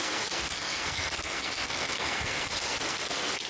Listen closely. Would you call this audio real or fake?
fake